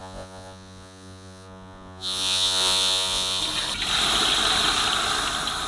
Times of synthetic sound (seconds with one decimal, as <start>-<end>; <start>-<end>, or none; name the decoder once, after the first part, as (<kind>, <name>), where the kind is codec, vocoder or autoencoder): 0.0-3.4 (vocoder, Vocos)